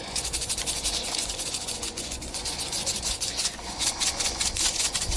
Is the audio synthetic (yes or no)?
yes